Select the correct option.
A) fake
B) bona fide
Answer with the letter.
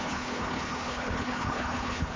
A